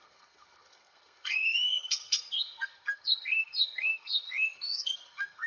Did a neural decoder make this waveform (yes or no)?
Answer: yes